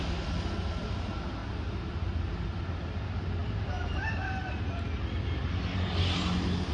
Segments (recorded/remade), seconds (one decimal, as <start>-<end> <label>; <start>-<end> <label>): 0.0-1.4 recorded; 1.4-2.2 remade; 2.2-3.4 recorded; 3.4-4.4 remade; 4.4-6.7 recorded